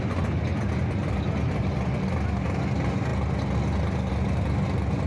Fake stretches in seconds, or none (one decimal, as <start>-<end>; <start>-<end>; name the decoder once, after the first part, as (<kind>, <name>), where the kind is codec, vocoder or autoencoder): none